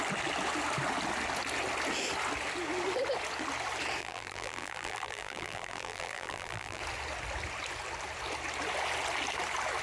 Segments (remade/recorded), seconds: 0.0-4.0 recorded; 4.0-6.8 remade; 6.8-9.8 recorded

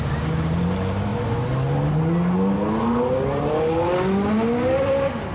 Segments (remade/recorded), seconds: 0.0-5.3 recorded